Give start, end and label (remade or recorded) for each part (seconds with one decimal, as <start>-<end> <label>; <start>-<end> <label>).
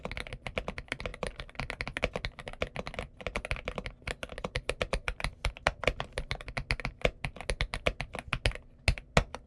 0.0-9.5 recorded